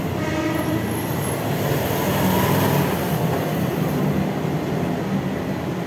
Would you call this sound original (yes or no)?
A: yes